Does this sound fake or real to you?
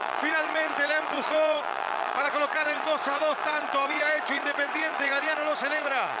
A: fake